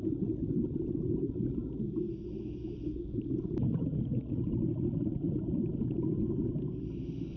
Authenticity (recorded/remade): recorded